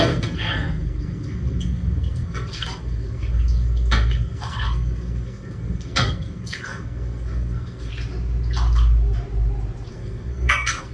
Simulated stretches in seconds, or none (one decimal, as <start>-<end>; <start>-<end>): 0.0-7.9; 9.9-10.9